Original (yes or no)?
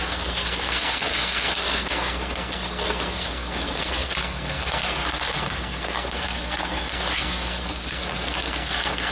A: no